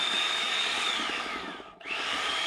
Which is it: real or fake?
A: fake